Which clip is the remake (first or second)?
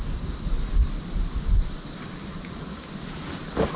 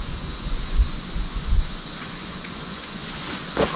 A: second